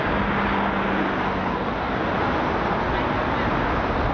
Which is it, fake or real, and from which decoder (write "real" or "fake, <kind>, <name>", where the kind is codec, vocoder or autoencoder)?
real